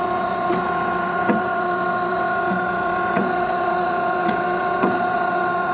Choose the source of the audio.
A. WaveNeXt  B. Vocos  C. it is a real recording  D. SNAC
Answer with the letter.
A